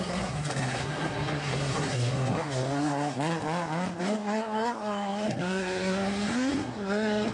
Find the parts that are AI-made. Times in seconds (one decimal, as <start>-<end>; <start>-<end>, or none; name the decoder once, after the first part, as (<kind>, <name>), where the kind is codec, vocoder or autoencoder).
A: 0.0-3.3 (codec, SNAC); 4.0-7.3